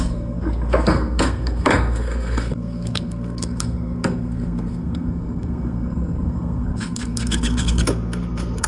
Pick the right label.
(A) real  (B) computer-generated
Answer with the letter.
B